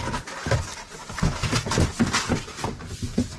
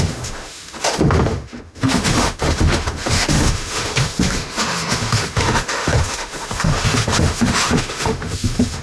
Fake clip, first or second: second